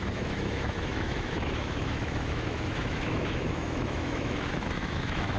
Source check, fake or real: fake